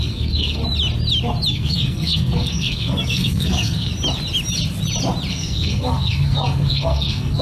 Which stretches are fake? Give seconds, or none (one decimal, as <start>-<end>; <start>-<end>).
0.0-0.6; 1.5-3.9; 5.3-7.4